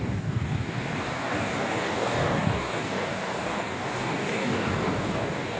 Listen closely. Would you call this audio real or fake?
fake